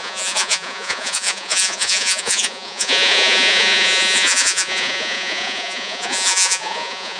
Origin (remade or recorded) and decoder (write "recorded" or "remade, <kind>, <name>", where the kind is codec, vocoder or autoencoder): remade, vocoder, Vocos